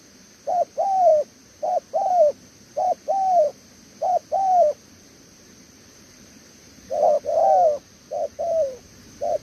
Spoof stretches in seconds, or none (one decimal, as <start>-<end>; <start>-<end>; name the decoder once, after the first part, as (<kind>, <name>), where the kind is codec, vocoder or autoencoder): 0.0-1.1 (vocoder, BigVGAN v2); 2.1-7.4; 8.4-9.4